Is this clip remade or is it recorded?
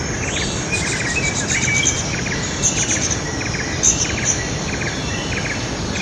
recorded